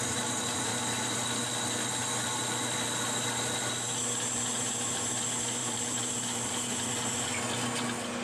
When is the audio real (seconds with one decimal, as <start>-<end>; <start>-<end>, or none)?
0.0-5.6; 6.9-8.2